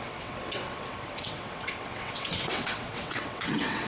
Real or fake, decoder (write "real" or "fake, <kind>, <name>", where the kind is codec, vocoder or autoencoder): fake, vocoder, WaveNeXt